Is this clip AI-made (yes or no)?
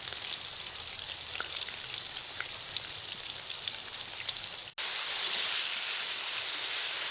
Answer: no